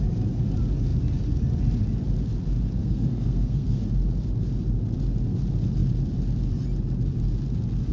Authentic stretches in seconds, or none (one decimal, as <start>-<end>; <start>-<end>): 0.0-2.8; 3.8-7.9